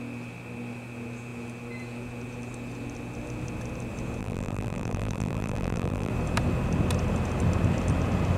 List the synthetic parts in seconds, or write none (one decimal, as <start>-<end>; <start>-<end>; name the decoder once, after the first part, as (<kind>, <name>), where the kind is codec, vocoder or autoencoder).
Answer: 4.2-6.1 (vocoder, BigVGAN v2)